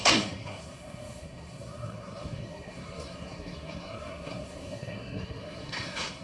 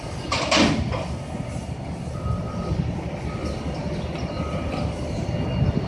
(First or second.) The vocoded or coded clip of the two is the first